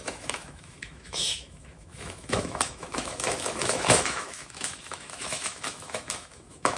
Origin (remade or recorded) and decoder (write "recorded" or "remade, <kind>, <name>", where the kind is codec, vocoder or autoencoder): remade, autoencoder, DAC-VAE